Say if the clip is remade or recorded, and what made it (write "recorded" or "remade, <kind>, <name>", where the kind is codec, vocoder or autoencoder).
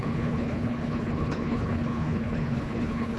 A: remade, codec, HILCodec